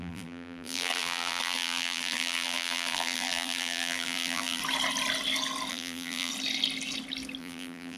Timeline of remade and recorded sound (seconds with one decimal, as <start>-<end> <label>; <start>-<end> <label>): 0.0-4.6 remade; 4.6-5.7 recorded; 5.7-6.3 remade; 6.3-7.4 recorded; 7.4-8.0 remade

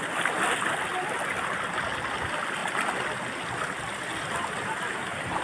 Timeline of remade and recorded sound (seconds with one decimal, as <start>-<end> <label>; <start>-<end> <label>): 0.0-5.4 recorded

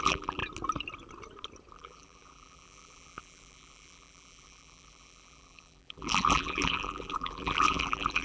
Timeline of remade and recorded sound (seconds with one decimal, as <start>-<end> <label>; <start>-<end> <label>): 0.0-0.4 remade; 0.4-1.7 recorded; 1.7-8.2 remade

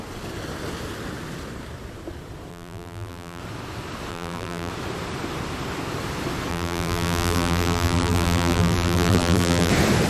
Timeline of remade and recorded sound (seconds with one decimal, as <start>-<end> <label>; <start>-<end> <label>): 0.0-2.5 recorded; 2.5-3.4 remade; 3.4-4.1 recorded; 4.1-4.7 remade; 4.7-6.5 recorded; 6.5-9.7 remade; 9.7-10.1 recorded

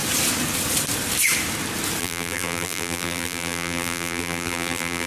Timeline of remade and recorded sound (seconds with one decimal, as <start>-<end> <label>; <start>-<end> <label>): 0.0-2.0 recorded; 2.0-5.1 remade

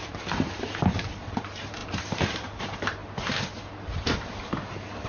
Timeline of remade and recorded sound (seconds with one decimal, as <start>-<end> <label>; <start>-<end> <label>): 0.0-3.0 remade; 3.0-3.6 recorded; 3.6-5.1 remade

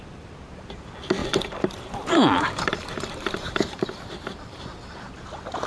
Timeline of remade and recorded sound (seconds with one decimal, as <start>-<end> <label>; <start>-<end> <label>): 0.0-1.2 recorded; 1.2-4.6 remade; 4.6-5.7 recorded